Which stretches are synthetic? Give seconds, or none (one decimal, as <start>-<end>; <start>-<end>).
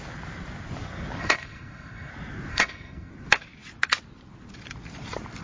1.2-2.1; 2.5-3.1